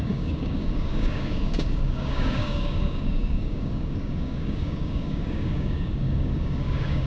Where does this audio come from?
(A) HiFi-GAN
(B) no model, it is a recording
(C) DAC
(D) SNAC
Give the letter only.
C